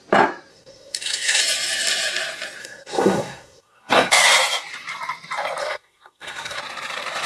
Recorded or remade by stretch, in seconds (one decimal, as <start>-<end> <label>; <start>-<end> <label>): 0.0-0.5 recorded; 0.5-1.4 remade; 1.4-2.6 recorded; 2.6-4.1 remade; 4.1-5.6 recorded; 5.6-6.6 remade; 6.6-7.3 recorded